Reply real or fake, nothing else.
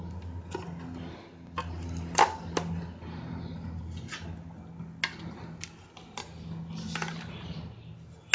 real